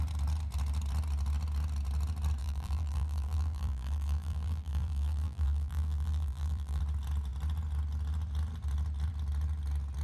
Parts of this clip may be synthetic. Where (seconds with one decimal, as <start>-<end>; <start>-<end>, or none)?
2.4-6.8